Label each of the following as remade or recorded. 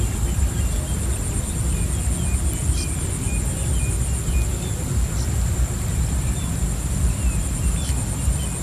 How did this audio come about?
recorded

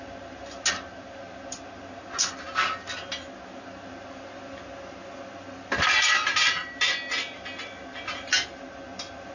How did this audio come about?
recorded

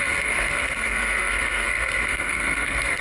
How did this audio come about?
remade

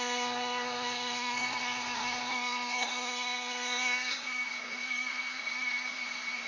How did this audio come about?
remade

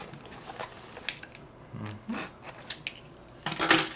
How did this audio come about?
recorded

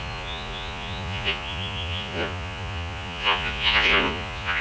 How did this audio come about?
remade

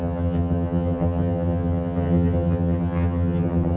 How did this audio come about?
remade